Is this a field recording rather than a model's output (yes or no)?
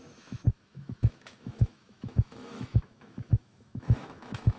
no